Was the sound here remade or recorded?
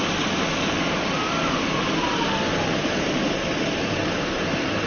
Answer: recorded